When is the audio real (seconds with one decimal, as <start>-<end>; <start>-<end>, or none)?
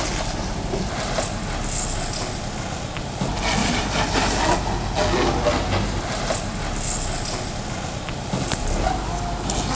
0.0-3.6; 4.4-9.7